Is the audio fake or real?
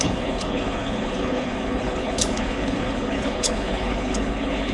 fake